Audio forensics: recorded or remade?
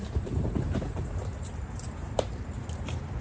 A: remade